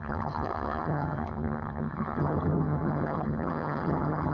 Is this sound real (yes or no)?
no